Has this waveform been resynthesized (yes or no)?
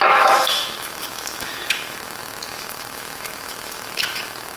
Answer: yes